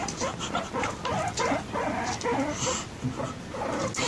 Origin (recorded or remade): recorded